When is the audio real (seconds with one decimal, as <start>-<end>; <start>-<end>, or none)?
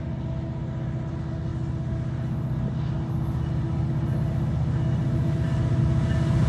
0.0-5.0; 5.8-6.5